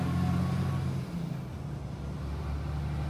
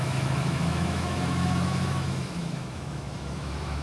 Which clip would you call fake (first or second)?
second